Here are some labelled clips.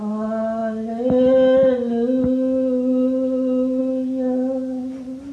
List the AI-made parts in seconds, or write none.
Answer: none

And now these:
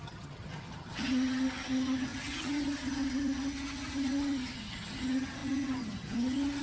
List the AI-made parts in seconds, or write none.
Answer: 0.0-6.6

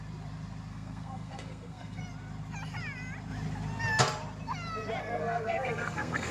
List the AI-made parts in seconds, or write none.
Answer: 0.7-2.0; 5.0-6.3

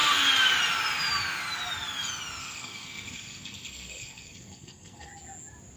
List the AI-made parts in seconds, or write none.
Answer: 2.4-5.1

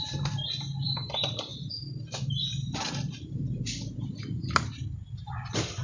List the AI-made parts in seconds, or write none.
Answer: 0.0-1.5; 2.3-5.8